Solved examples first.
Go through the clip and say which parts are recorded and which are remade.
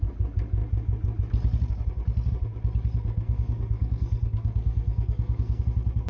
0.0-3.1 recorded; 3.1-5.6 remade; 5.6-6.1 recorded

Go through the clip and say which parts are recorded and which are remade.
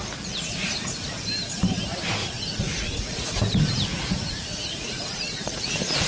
0.0-0.6 recorded; 0.6-1.1 remade; 1.1-2.2 recorded; 2.2-3.3 remade; 3.3-3.9 recorded; 3.9-6.1 remade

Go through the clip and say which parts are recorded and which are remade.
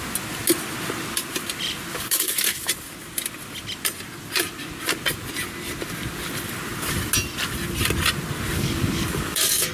0.0-1.9 recorded; 1.9-2.7 remade; 2.7-8.5 recorded; 8.5-9.7 remade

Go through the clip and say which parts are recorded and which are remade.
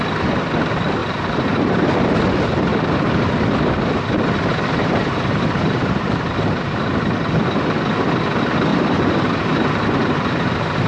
0.0-1.0 recorded; 1.0-2.2 remade; 2.2-2.7 recorded; 2.7-3.3 remade; 3.3-4.8 recorded; 4.8-6.9 remade; 6.9-8.7 recorded; 8.7-10.9 remade